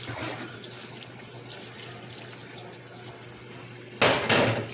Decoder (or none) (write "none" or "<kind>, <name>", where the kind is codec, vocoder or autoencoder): none